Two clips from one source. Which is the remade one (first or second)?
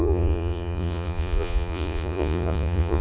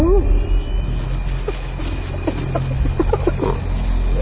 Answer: first